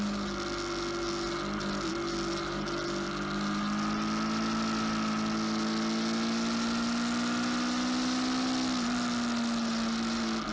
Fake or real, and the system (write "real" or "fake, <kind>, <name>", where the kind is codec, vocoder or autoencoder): real